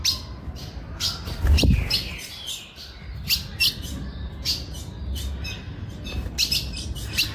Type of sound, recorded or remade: recorded